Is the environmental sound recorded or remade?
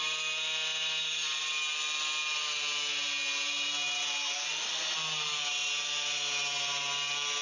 recorded